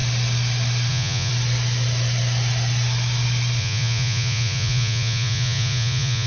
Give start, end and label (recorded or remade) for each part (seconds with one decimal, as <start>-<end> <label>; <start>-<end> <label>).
0.0-0.9 recorded; 0.9-1.3 remade; 1.3-3.6 recorded; 3.6-6.3 remade